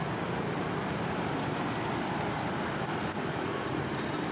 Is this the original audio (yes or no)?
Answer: yes